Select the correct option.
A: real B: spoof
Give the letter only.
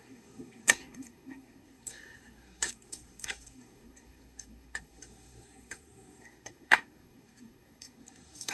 B